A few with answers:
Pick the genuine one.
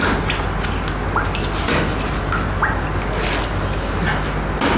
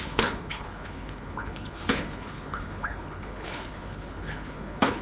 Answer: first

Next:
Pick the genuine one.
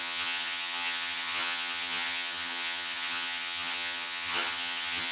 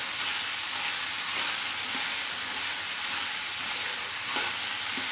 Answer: second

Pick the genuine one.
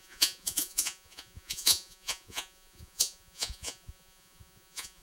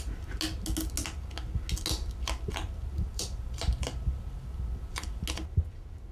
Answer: second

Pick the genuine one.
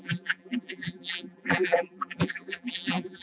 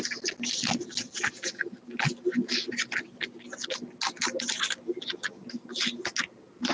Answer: second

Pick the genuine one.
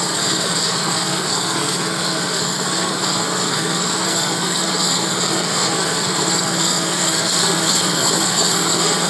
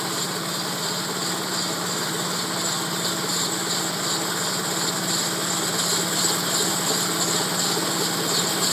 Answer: second